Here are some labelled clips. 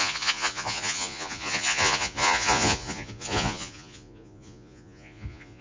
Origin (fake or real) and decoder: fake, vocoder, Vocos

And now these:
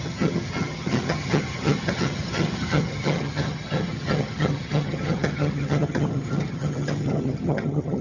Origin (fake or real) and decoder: fake, vocoder, HiFi-GAN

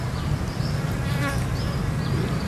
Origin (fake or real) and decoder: real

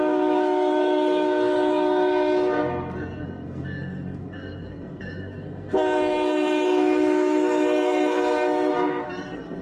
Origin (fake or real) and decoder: fake, codec, SNAC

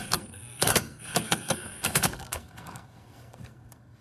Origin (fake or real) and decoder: fake, codec, SNAC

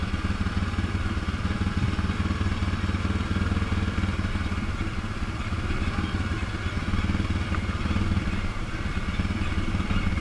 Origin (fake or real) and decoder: real